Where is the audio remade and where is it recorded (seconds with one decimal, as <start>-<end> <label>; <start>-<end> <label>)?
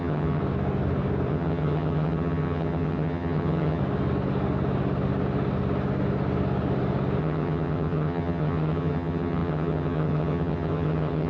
0.0-0.4 remade; 0.4-1.3 recorded; 1.3-3.8 remade; 3.8-7.2 recorded; 7.2-11.3 remade